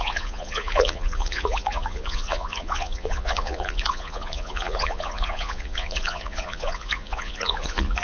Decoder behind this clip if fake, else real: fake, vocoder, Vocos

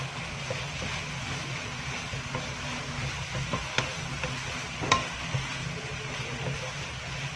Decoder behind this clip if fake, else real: real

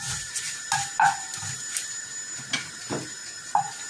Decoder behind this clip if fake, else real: real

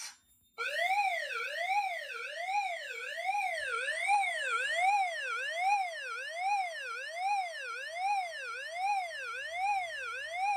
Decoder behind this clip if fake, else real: real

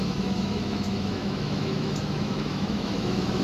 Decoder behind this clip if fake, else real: fake, autoencoder, DAC-VAE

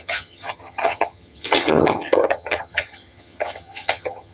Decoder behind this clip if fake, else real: fake, vocoder, HiFi-GAN